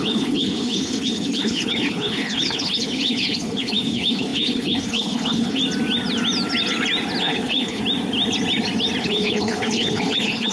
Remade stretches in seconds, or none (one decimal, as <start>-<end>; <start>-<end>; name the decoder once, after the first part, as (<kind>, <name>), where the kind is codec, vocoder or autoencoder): 0.0-5.6 (codec, HILCodec); 7.2-7.8; 9.0-10.5